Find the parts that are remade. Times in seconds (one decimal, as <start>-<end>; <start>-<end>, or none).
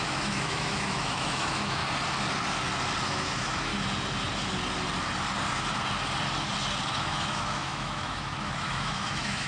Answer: 0.0-1.8; 3.1-3.7; 7.0-9.5